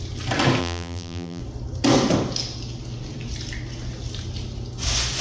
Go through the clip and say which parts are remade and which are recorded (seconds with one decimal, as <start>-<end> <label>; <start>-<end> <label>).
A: 0.0-0.6 recorded; 0.6-1.4 remade; 1.4-5.2 recorded